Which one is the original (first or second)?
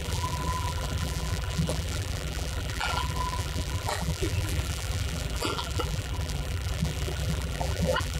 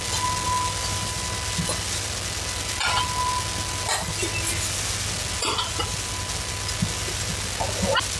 second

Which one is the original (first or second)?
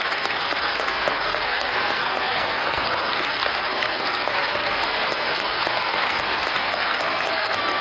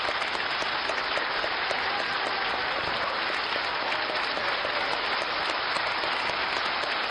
second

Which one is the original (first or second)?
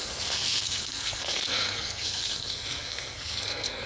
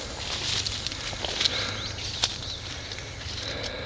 second